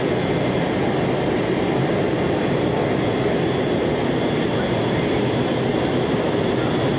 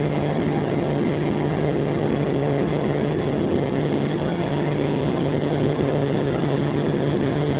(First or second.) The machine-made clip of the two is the second